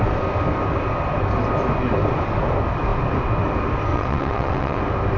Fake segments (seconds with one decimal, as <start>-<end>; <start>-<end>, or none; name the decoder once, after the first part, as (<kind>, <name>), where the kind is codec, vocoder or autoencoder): 3.9-4.8 (vocoder, WaveNeXt)